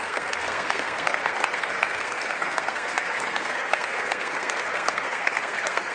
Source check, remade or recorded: remade